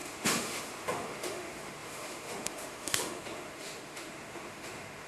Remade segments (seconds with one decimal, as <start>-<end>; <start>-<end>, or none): 0.0-5.1

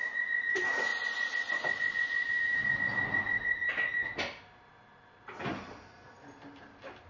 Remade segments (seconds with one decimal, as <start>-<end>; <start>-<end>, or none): none